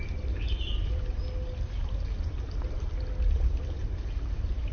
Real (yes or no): yes